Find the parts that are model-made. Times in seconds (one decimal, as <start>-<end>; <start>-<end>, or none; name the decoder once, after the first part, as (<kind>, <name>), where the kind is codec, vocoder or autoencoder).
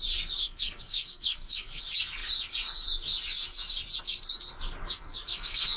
0.4-1.8 (codec, SNAC); 4.8-5.8